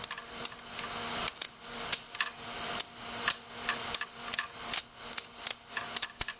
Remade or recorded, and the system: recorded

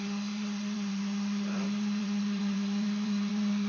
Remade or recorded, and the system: remade, vocoder, Vocos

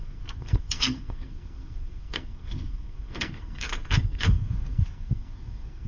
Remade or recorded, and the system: remade, codec, SNAC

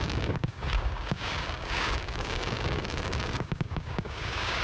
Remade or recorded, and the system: remade, codec, DAC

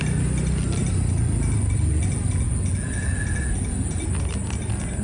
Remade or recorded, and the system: recorded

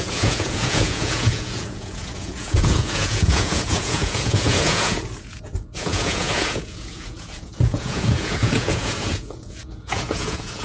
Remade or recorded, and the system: remade, vocoder, Vocos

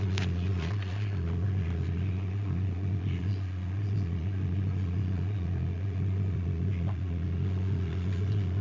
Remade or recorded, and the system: remade, vocoder, Vocos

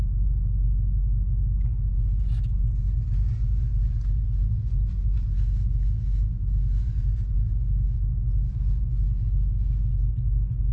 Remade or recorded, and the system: recorded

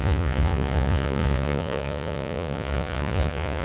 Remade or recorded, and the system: remade, vocoder, Vocos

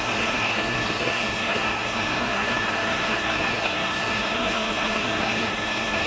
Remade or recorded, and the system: remade, codec, SNAC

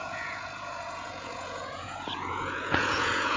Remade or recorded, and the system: remade, vocoder, Vocos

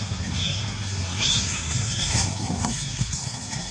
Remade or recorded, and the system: remade, codec, SNAC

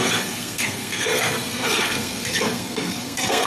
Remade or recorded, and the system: remade, codec, SNAC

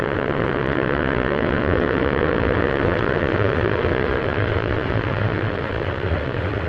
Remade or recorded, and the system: remade, vocoder, WaveNeXt